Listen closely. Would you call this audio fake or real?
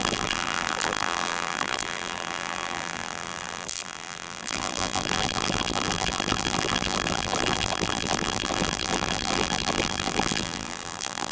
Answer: fake